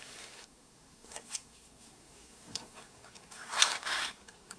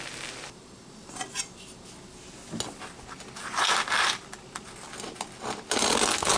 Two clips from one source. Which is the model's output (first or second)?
first